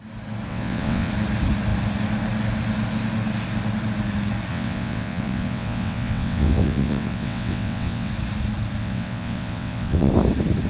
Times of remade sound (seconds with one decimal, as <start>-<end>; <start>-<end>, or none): 0.5-1.1; 4.5-8.1; 8.8-10.1